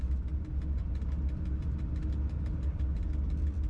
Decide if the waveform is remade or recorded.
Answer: recorded